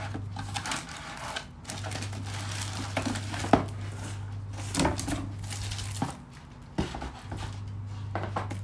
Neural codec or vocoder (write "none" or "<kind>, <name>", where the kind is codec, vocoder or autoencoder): none